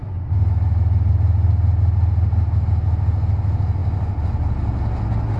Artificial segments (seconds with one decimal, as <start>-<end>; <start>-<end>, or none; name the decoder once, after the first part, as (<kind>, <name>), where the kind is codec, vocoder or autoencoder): none